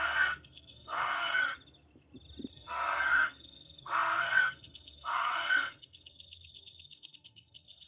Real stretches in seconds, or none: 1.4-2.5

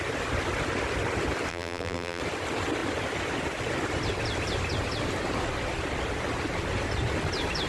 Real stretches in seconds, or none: 0.0-1.5; 2.2-7.7

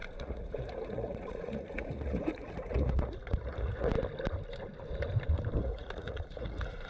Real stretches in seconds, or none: 3.9-5.6